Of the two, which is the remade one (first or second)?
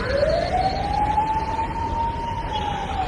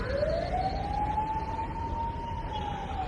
first